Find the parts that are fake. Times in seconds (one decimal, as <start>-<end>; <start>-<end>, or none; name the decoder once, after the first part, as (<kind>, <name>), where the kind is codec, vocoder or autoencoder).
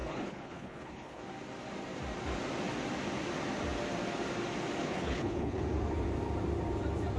0.0-1.2 (codec, HILCodec); 4.8-5.6